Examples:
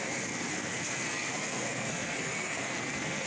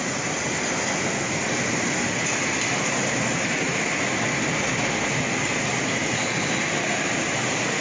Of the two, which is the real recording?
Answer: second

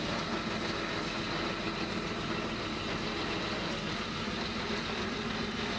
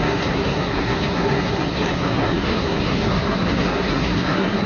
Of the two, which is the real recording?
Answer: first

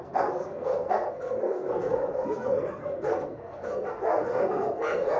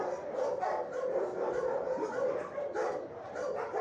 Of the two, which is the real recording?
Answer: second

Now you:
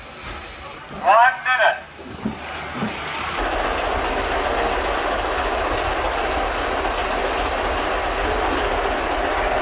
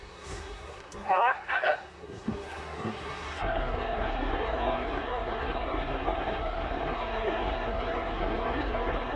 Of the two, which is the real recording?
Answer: first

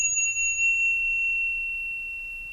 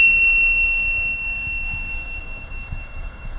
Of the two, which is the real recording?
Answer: first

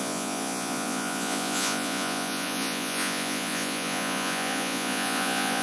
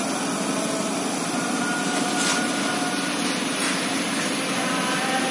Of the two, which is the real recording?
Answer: second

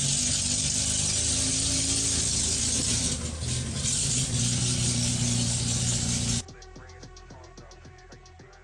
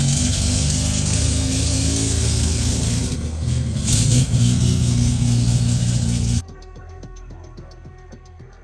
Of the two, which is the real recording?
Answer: first